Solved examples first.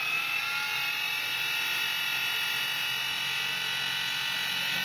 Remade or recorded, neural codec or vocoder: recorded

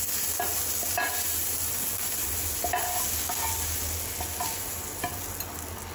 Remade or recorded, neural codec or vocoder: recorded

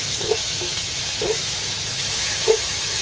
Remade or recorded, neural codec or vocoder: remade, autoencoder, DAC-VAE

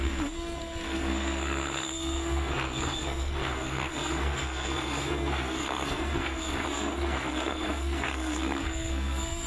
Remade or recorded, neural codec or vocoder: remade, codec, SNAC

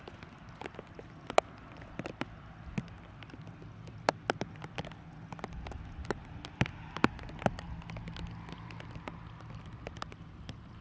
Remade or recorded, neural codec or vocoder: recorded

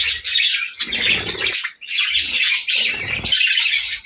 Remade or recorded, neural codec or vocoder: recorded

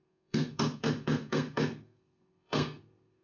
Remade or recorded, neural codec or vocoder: remade, codec, SNAC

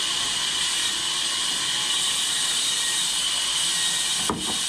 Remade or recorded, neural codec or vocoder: remade, vocoder, BigVGAN v2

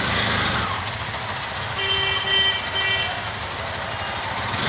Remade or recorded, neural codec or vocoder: recorded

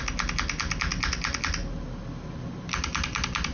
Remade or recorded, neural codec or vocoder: recorded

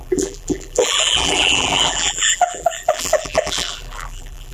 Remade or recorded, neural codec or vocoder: remade, vocoder, BigVGAN v2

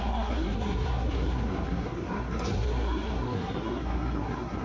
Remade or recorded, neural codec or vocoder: remade, codec, SNAC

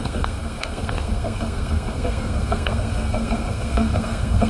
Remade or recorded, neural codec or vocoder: remade, codec, SNAC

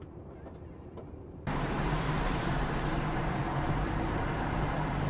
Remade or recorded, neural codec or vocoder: remade, vocoder, BigVGAN v2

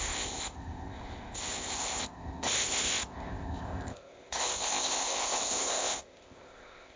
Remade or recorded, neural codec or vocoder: remade, codec, ZipCodec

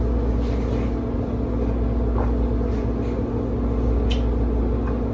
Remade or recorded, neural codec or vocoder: recorded